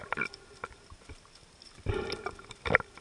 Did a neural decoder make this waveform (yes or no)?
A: no